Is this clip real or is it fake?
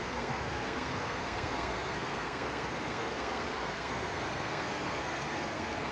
fake